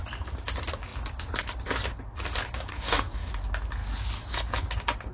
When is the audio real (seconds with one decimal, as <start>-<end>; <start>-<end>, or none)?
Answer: 0.0-2.7; 3.3-5.1